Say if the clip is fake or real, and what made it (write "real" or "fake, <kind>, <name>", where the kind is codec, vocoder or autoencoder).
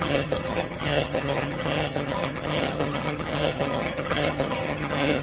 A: fake, vocoder, HiFi-GAN